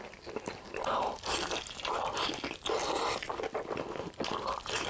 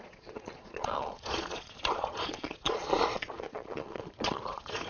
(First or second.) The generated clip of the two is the second